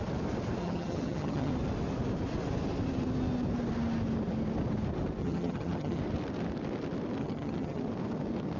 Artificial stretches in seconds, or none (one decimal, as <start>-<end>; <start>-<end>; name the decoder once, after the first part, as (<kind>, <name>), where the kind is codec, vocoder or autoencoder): 0.6-1.5 (vocoder, HiFi-GAN); 5.2-6.0; 7.2-7.8